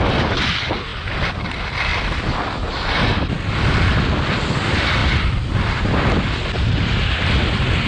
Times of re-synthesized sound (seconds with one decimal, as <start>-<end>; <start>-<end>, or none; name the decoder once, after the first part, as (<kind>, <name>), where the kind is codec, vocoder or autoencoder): 0.9-1.5 (vocoder, BigVGAN v2); 1.9-2.4; 5.0-6.1